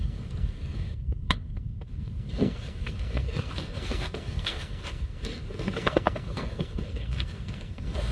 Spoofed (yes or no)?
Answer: yes